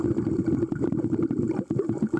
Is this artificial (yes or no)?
no